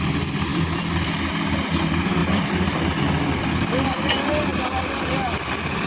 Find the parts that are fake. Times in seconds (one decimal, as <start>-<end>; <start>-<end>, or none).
0.5-1.3; 2.2-4.1